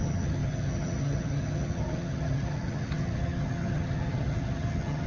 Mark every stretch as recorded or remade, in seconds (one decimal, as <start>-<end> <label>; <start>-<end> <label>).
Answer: 0.0-5.1 remade

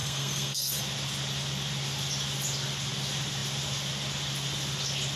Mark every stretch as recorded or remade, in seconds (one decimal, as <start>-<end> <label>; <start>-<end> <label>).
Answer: 0.0-0.8 remade; 0.8-5.2 recorded

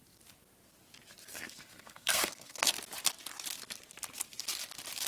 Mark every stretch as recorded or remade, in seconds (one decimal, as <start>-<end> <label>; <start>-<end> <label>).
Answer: 0.0-1.3 recorded; 1.3-2.7 remade; 2.7-5.1 recorded

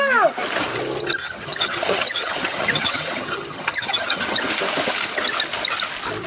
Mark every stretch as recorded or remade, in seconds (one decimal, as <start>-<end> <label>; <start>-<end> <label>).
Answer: 0.0-1.2 recorded; 1.2-4.5 remade; 4.5-6.3 recorded

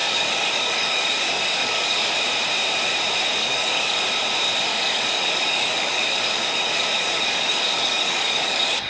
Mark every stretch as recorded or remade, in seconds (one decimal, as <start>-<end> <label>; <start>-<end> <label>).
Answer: 0.0-2.1 remade; 2.1-3.4 recorded; 3.4-4.0 remade; 4.0-4.7 recorded; 4.7-8.9 remade